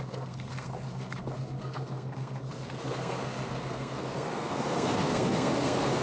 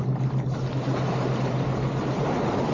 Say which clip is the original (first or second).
second